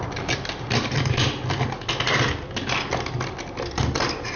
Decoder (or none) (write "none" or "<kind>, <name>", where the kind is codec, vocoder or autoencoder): none